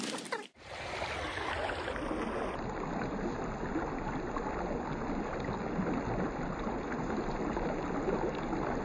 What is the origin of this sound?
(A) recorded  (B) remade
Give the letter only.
A